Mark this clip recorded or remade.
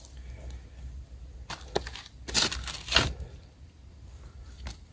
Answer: recorded